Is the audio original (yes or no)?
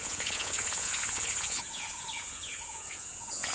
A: no